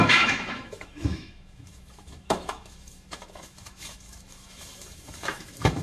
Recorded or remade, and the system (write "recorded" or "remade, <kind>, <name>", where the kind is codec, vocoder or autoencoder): remade, autoencoder, DAC-VAE